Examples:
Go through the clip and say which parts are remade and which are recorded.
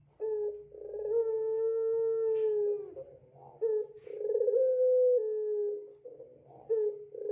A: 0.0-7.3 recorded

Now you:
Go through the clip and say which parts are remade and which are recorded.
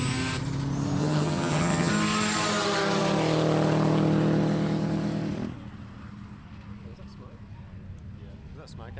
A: 0.0-1.0 recorded; 1.0-1.9 remade; 1.9-9.0 recorded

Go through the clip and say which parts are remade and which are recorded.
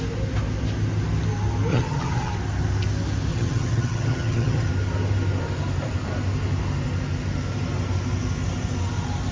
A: 0.0-1.7 recorded; 1.7-2.3 remade; 2.3-3.3 recorded; 3.3-4.7 remade; 4.7-9.3 recorded